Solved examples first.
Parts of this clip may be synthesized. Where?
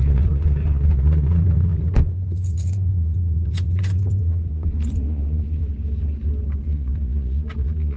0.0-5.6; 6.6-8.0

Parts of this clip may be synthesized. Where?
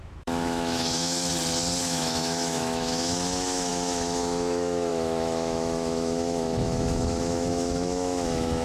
0.0-1.3; 1.8-8.6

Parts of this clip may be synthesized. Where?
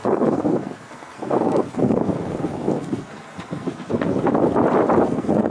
0.0-4.3; 5.0-5.5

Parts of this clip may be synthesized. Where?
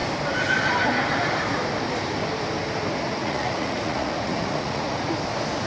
3.2-5.1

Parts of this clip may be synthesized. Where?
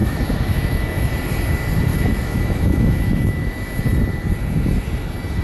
0.0-1.1; 1.9-3.8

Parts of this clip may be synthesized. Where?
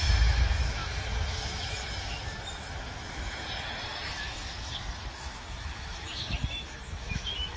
0.0-7.6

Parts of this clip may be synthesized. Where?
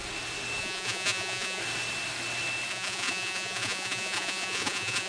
0.6-1.6; 2.7-5.1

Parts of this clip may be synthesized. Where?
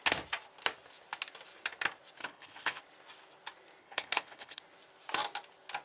2.2-2.8; 3.8-4.6